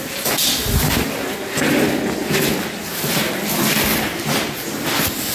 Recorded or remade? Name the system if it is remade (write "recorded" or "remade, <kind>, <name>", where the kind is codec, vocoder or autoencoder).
recorded